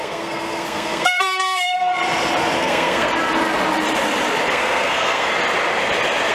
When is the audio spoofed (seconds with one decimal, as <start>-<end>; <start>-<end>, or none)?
0.0-1.9; 2.6-3.1; 4.5-5.3

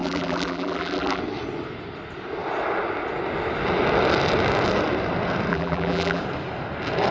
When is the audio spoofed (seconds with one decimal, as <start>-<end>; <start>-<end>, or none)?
0.0-1.2; 5.5-6.2

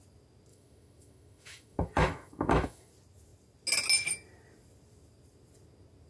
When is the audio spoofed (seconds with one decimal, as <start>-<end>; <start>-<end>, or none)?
0.5-2.9

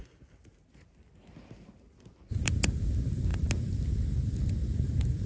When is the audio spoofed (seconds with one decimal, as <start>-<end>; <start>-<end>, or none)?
none

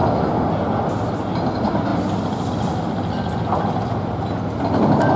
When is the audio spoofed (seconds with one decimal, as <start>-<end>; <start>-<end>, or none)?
none

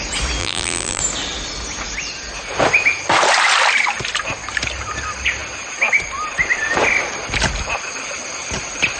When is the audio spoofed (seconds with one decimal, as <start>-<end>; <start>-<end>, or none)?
0.4-1.0

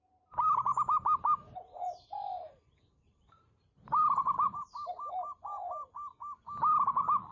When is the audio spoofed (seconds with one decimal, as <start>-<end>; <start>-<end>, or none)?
0.7-5.1

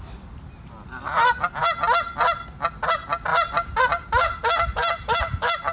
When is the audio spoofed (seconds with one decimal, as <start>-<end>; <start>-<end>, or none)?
3.3-3.8